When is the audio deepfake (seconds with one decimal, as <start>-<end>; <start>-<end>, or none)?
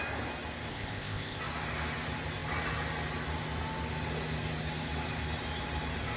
0.7-1.4